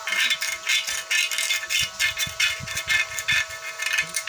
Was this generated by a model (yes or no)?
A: yes